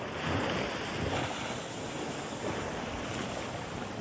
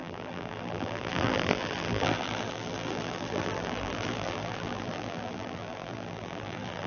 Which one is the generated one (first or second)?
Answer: second